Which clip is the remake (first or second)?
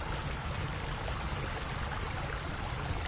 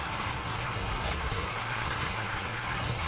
second